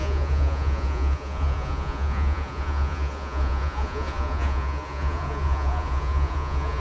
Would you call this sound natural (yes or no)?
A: no